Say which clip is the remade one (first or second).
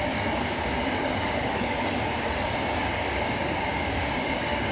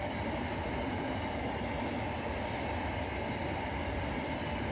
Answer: first